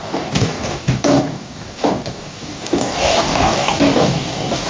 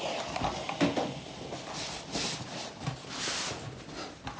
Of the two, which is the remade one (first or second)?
first